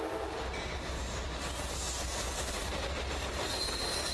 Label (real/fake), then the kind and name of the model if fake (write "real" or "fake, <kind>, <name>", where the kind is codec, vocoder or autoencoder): real